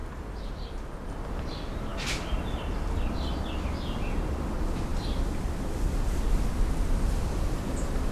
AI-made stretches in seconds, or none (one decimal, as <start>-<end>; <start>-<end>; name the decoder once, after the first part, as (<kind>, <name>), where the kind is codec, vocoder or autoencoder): none